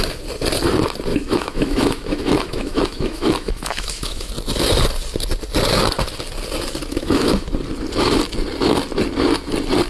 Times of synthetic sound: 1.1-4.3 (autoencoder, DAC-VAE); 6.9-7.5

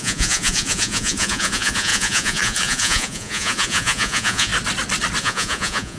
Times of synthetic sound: 0.0-4.5 (vocoder, Vocos); 5.2-6.0

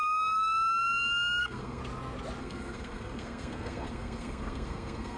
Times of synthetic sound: 1.4-1.8 (codec, SNAC); 2.4-5.2

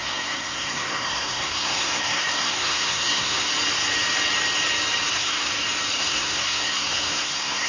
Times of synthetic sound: 0.0-3.5 (codec, SNAC); 5.1-5.5; 6.0-7.7

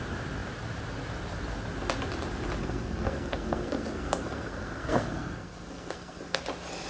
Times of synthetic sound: 2.6-6.4 (codec, SNAC)

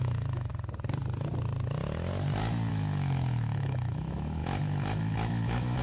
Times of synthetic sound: 0.0-0.5 (autoencoder, DAC-VAE); 2.7-5.8